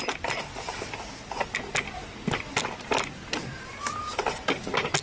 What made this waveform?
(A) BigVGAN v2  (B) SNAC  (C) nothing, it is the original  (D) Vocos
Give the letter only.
C